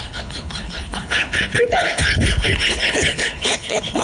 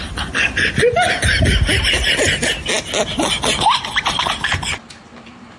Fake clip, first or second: first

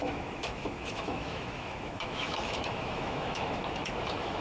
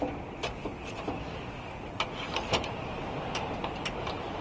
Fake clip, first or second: first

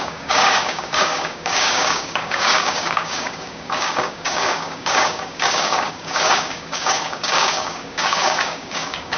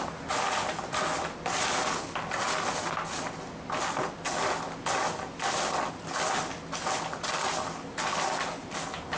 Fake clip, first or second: first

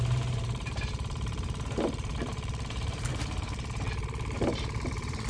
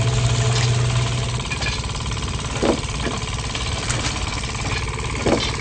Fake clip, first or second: first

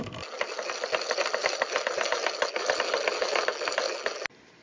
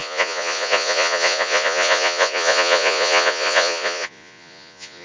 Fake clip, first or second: second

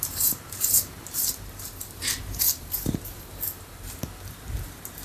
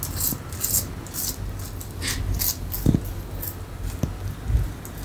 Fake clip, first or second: first